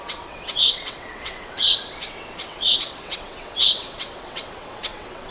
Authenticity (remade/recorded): remade